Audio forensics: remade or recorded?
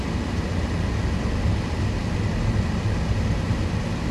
recorded